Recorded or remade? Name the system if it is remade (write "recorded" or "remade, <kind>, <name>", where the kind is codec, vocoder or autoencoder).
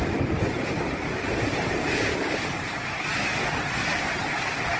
recorded